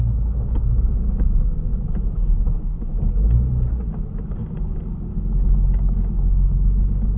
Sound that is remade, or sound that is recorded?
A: recorded